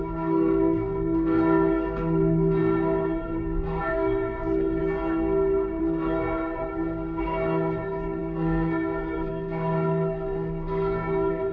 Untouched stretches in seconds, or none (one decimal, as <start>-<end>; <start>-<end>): 4.8-5.8